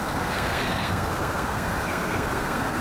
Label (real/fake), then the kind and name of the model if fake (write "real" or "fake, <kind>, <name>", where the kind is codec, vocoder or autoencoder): fake, codec, SNAC